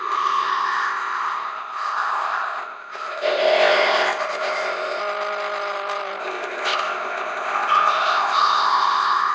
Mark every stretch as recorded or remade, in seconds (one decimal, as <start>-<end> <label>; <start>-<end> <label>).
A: 0.0-5.0 remade; 5.0-6.2 recorded; 6.2-9.3 remade